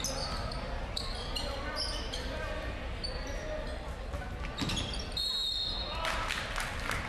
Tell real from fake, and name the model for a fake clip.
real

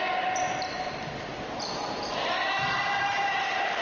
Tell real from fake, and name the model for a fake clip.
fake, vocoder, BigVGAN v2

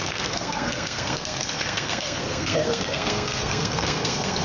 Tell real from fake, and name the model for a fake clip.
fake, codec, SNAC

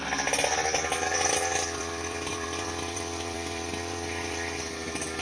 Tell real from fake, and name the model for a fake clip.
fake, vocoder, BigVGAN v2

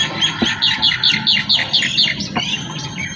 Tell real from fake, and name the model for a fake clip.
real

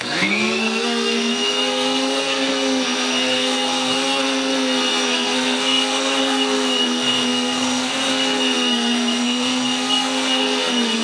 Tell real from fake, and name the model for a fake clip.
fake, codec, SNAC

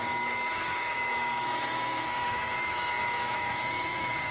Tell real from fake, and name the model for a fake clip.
fake, autoencoder, DAC-VAE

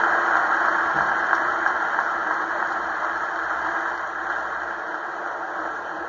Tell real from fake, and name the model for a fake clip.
real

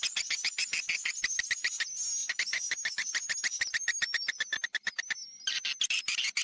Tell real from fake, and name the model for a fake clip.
real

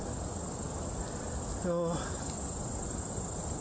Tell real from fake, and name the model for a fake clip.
real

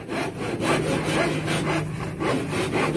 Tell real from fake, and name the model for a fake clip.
real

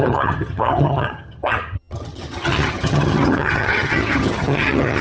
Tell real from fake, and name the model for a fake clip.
fake, vocoder, HiFi-GAN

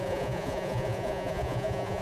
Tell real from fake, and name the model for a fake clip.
fake, vocoder, Vocos